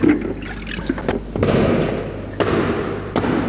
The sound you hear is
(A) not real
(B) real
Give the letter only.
B